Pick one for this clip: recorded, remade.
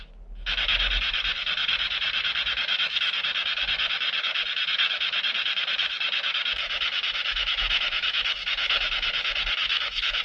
remade